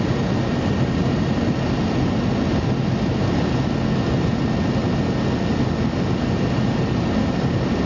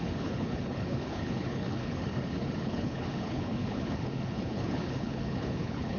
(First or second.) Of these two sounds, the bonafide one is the first